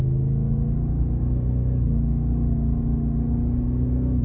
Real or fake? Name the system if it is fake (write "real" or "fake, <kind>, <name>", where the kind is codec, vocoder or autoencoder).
real